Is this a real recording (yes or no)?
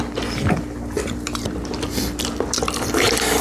no